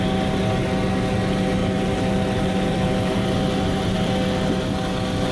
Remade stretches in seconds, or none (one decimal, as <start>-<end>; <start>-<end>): 1.6-4.1